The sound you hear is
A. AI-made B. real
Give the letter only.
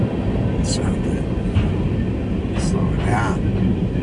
B